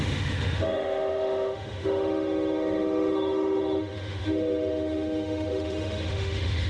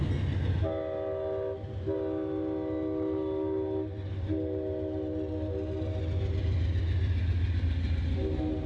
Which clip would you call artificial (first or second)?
first